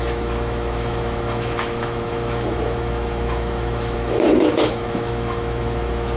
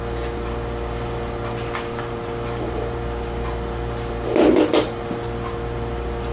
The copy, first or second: first